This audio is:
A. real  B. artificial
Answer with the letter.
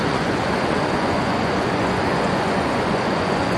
B